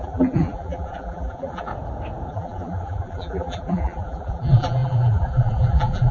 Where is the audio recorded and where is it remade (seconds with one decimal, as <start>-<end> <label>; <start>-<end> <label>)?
0.0-1.7 remade; 1.7-2.3 recorded; 2.3-6.1 remade